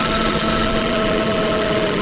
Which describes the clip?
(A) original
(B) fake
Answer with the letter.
B